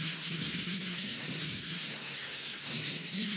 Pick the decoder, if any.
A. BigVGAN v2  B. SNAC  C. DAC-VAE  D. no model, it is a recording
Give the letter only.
B